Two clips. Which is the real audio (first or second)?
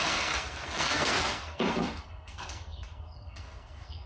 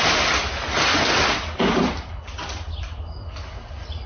second